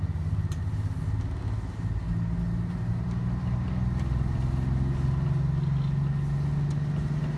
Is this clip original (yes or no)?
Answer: yes